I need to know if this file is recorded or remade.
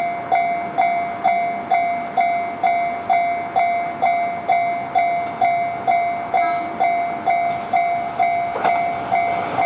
recorded